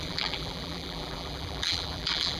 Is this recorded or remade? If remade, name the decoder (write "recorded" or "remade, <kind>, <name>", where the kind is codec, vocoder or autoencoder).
remade, vocoder, BigVGAN v2